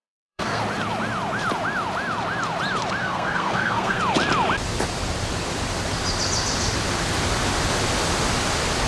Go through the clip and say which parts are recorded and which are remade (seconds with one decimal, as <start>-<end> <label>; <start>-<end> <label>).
0.0-0.6 remade; 0.6-3.0 recorded; 3.0-4.0 remade; 4.0-8.9 recorded